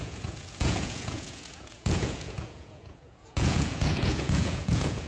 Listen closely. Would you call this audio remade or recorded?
remade